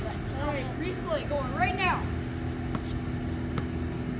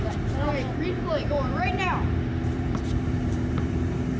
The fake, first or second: second